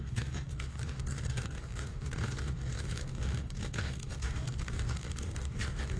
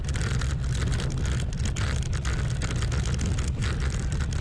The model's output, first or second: first